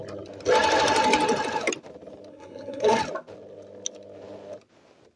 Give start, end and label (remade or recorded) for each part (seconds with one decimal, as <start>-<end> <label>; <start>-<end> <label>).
0.0-2.3 recorded; 2.3-3.0 remade; 3.0-5.2 recorded